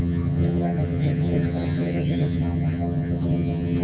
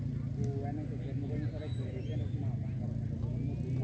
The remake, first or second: first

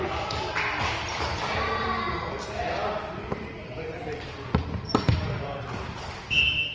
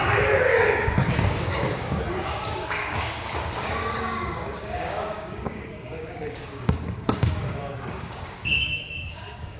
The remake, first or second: second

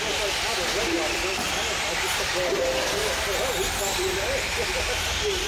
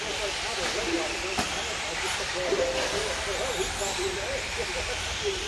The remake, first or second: second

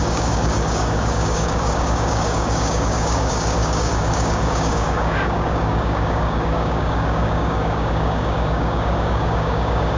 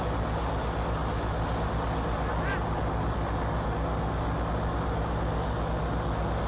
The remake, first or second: first